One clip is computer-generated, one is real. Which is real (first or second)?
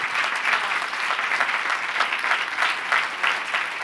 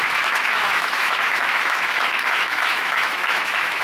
first